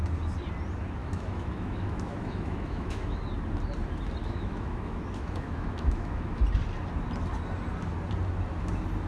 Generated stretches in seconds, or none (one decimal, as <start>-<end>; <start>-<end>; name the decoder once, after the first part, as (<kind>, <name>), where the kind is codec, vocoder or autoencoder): 1.0-3.2 (autoencoder, DAC-VAE); 4.2-6.4